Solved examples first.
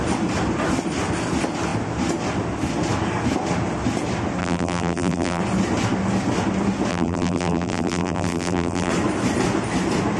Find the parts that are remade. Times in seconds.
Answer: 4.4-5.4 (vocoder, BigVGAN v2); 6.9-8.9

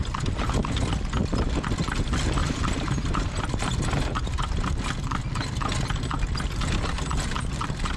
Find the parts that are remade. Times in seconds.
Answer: 2.4-4.7 (vocoder, BigVGAN v2)

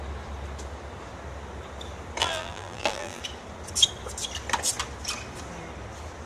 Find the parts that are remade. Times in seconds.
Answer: 2.2-3.2 (vocoder, BigVGAN v2)

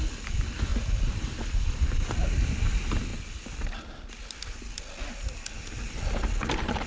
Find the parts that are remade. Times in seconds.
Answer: 0.7-2.6 (vocoder, BigVGAN v2); 3.1-4.1

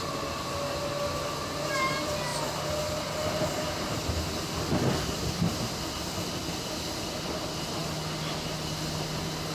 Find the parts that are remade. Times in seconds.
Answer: none